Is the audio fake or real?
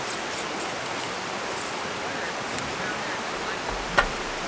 real